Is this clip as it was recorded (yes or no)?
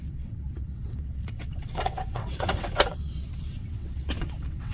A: no